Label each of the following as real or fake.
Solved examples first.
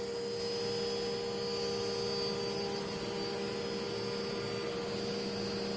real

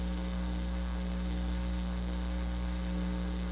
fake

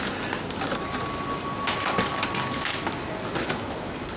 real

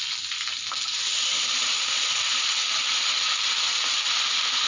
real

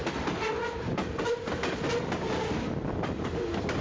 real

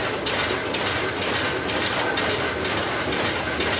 real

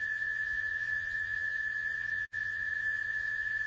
fake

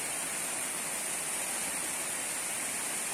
real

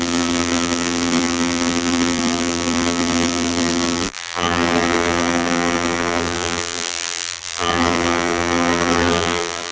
fake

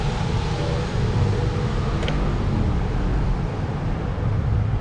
real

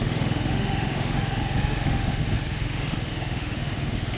fake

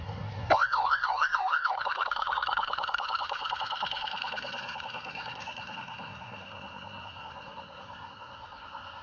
fake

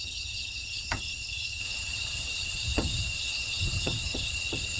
fake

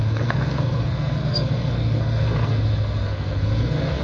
fake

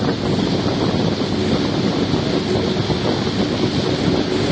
real